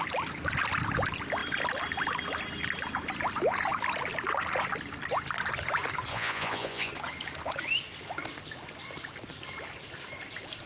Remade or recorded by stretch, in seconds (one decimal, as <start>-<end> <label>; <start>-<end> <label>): 0.0-6.1 recorded; 6.1-6.9 remade; 6.9-10.7 recorded